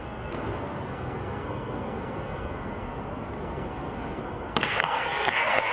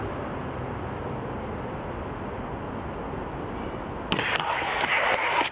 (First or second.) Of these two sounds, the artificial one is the first